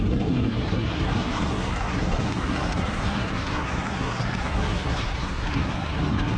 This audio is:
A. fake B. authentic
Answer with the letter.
A